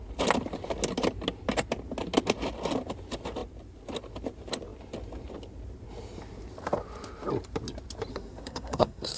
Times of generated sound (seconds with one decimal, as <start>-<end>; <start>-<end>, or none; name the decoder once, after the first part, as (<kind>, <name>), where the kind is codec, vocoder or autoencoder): 8.1-9.2 (codec, SNAC)